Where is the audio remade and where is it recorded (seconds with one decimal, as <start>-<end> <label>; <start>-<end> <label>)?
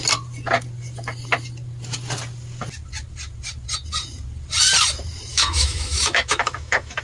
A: 0.0-5.3 recorded; 5.3-7.0 remade